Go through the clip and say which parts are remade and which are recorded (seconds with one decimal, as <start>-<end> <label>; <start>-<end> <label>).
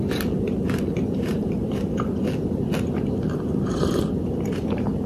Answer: 0.0-1.4 remade; 1.4-3.7 recorded; 3.7-5.1 remade